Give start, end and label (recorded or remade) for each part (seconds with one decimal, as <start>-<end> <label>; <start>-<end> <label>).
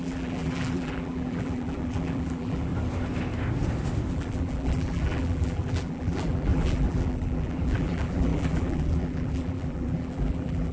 0.0-2.7 remade; 2.7-4.1 recorded; 4.1-10.7 remade